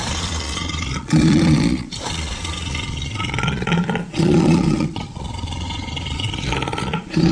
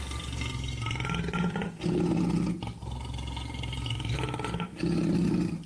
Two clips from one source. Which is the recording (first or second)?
second